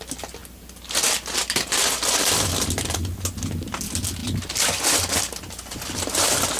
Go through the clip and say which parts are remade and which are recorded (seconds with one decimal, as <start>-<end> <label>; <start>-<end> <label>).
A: 0.0-6.6 recorded